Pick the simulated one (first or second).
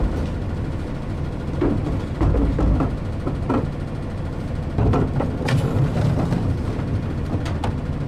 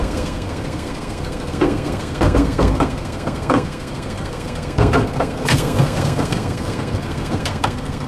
second